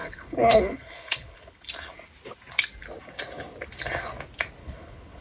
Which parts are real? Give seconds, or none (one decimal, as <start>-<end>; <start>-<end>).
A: 1.7-4.6